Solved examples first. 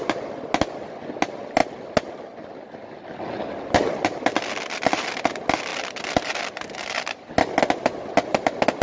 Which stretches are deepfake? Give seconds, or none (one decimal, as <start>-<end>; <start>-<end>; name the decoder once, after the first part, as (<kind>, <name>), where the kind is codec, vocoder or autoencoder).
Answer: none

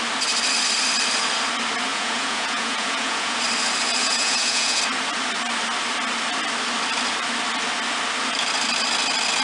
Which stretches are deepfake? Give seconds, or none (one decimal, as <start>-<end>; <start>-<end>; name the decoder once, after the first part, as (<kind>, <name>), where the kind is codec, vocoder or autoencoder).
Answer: 1.9-3.4 (vocoder, Vocos); 4.0-4.8

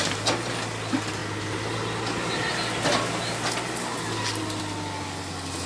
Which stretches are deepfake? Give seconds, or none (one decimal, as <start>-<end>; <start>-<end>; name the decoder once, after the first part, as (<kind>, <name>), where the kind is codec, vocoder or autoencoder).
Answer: none

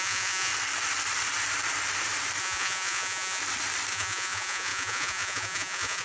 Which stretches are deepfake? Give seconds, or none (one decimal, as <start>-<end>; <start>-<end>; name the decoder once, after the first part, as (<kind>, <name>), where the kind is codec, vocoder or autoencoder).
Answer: 0.0-0.5 (vocoder, Vocos); 2.4-3.4; 3.9-6.0

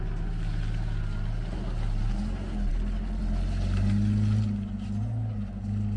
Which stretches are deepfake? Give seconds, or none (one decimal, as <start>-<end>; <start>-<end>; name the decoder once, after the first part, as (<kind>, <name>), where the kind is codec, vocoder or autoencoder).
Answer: none

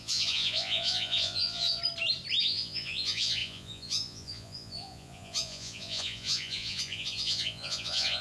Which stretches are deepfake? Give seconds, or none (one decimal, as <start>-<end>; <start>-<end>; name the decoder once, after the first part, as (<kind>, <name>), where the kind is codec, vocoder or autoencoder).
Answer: 0.0-1.8 (vocoder, Vocos); 2.4-8.2